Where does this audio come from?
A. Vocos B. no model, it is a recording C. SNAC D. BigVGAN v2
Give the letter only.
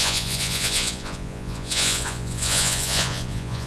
A